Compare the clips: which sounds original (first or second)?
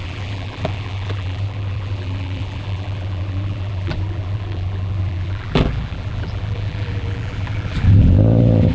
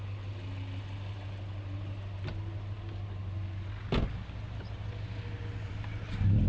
second